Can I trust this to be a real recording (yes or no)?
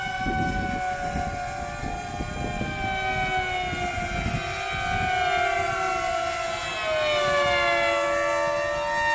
yes